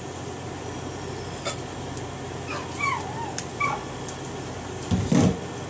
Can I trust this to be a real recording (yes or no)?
yes